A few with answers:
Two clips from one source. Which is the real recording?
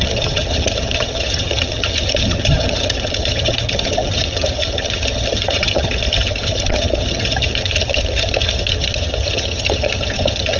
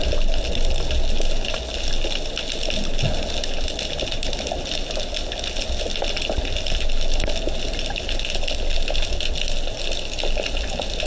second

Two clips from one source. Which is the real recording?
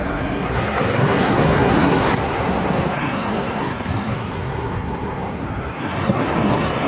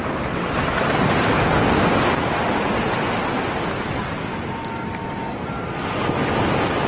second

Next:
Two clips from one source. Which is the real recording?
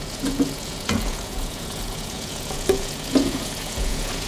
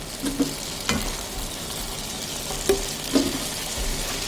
second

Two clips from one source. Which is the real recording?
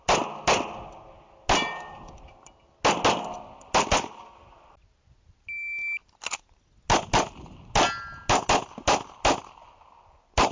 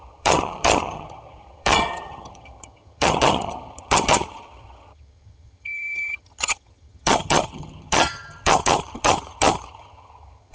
first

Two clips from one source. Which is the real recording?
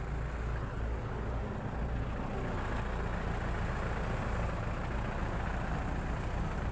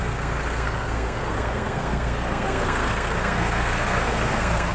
first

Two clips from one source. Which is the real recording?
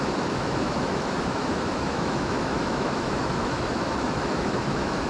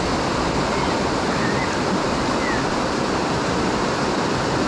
second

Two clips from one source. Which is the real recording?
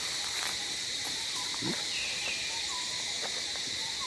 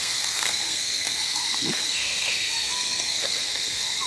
first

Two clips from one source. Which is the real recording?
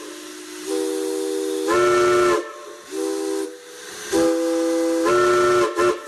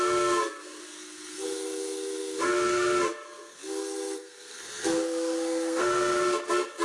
first